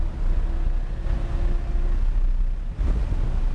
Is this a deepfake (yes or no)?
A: no